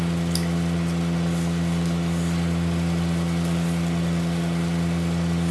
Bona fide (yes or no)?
yes